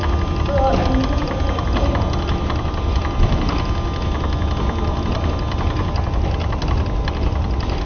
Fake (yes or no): no